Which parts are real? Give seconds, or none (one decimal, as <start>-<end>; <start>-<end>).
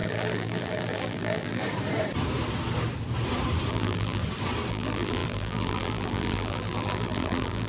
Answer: 1.6-3.7; 4.2-4.7